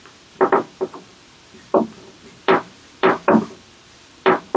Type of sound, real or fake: fake